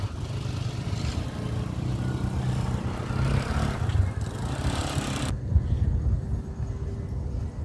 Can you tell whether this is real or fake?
real